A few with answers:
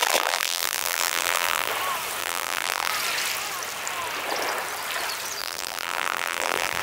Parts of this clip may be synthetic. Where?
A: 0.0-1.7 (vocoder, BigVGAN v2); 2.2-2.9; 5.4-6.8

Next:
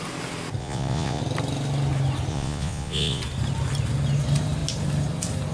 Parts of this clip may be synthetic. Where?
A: 0.6-1.2 (vocoder, Vocos); 2.3-3.2

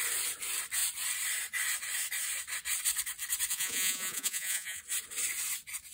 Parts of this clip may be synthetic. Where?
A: 3.5-4.8 (vocoder, Vocos)

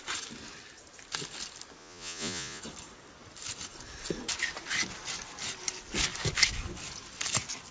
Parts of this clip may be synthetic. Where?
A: 1.8-2.6 (vocoder, Vocos)

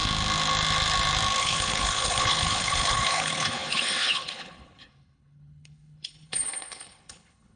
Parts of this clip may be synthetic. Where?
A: 1.4-7.6 (codec, HILCodec)

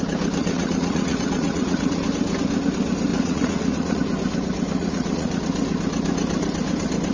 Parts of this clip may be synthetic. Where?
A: 0.4-2.0 (vocoder, Vocos); 3.1-4.0; 4.8-5.4